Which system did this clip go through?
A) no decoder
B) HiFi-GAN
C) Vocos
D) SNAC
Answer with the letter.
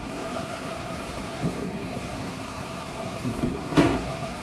D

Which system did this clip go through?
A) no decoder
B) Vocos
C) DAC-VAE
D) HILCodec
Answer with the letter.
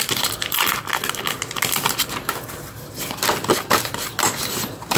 A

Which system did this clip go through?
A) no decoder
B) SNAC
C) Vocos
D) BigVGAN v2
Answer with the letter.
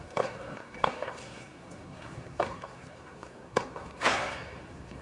B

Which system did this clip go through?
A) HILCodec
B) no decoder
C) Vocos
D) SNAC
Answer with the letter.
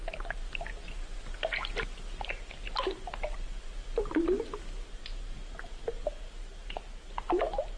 B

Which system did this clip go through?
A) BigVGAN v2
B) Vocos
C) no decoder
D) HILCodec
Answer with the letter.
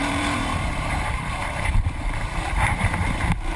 A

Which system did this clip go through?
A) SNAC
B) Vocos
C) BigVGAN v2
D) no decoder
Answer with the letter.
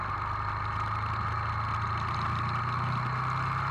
D